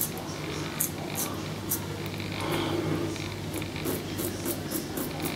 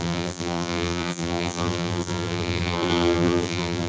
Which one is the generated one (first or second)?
second